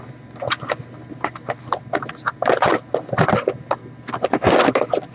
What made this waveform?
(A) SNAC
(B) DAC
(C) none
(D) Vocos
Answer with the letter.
C